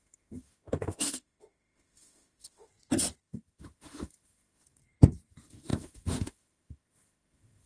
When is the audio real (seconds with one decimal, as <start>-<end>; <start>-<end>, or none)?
2.7-3.2; 4.8-5.3